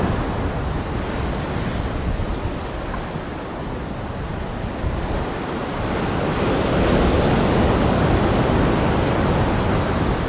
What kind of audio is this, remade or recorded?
recorded